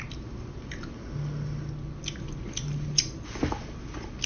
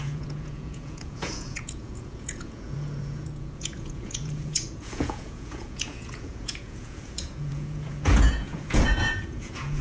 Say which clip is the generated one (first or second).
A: second